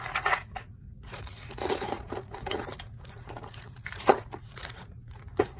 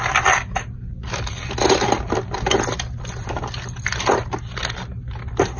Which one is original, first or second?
second